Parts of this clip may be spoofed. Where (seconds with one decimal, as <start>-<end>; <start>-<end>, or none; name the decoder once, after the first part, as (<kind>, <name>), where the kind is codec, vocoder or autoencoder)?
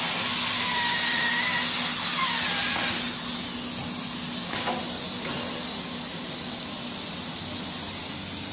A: none